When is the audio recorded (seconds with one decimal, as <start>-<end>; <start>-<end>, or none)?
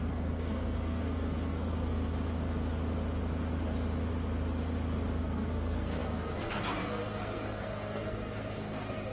2.1-5.2